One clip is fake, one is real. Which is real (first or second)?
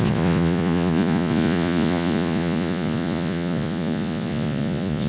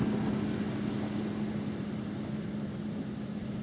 second